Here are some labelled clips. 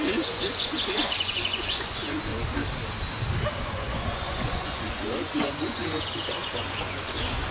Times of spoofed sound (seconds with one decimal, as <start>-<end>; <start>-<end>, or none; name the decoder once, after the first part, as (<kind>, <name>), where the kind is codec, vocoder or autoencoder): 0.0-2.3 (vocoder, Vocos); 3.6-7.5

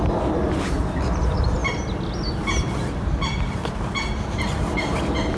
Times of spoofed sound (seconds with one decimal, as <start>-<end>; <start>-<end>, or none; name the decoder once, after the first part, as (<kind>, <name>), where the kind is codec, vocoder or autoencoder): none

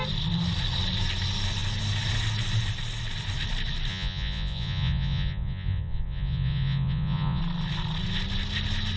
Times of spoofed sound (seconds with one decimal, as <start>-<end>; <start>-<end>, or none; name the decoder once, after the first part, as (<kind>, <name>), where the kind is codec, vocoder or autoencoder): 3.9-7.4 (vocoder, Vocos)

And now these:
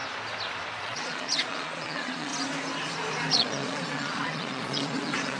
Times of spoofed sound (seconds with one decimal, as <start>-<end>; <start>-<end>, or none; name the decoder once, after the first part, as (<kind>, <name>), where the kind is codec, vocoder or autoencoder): 0.8-2.3 (vocoder, Vocos); 3.3-5.4